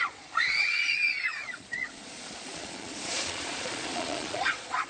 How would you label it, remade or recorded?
remade